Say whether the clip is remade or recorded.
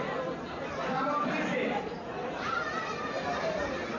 remade